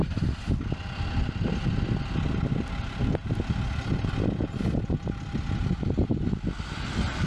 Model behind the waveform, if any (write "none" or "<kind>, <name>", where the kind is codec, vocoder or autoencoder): none